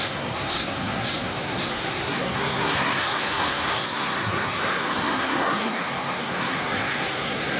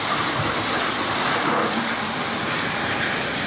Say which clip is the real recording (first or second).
second